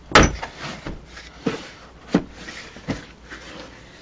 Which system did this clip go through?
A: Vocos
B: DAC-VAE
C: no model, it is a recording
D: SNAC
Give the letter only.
C